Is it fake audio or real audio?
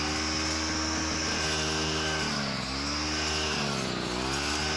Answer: real